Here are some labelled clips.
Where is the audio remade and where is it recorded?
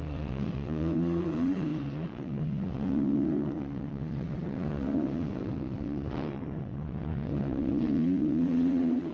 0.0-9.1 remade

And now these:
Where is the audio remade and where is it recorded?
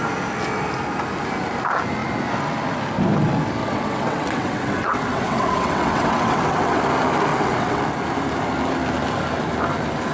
0.0-3.6 recorded; 3.6-6.8 remade; 6.8-7.3 recorded; 7.3-7.8 remade; 7.8-10.1 recorded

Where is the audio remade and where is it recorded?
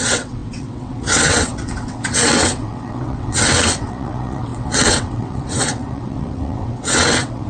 0.0-7.5 remade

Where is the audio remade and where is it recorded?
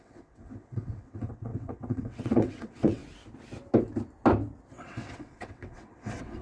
0.0-3.0 remade; 3.0-4.7 recorded; 4.7-6.4 remade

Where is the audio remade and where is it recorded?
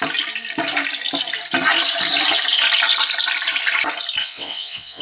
0.0-4.2 recorded; 4.2-5.0 remade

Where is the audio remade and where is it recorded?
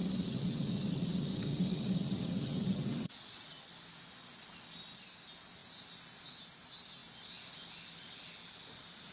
0.0-3.6 remade; 3.6-9.1 recorded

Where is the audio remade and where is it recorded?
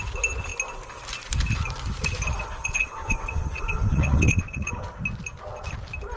0.0-2.6 recorded; 2.6-4.7 remade; 4.7-6.2 recorded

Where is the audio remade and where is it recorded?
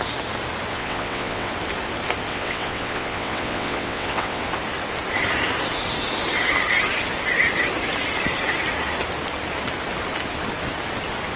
0.0-0.7 recorded; 0.7-1.5 remade; 1.5-2.3 recorded; 2.3-4.4 remade; 4.4-11.4 recorded